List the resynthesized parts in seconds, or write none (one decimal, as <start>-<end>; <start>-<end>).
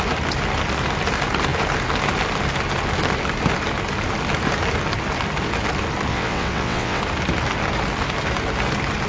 6.1-7.0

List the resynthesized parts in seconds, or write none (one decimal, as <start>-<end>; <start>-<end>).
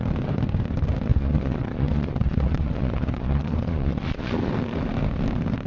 1.1-4.5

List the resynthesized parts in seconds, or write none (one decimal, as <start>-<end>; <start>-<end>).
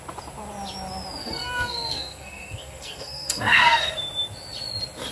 1.2-3.8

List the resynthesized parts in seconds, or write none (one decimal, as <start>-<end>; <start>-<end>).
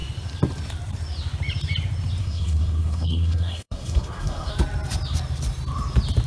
2.2-4.5